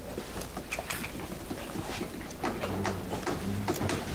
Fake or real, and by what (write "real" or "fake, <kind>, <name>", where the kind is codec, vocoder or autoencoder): real